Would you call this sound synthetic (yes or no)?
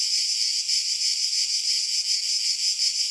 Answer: no